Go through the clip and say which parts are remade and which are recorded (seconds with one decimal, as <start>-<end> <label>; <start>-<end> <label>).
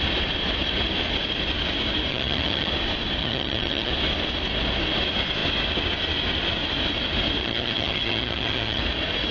0.0-2.1 recorded; 2.1-2.7 remade; 2.7-3.2 recorded; 3.2-3.9 remade; 3.9-7.4 recorded; 7.4-8.8 remade; 8.8-9.3 recorded